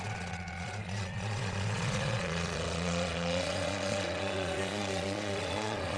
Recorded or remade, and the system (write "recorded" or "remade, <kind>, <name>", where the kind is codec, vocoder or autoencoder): remade, vocoder, Vocos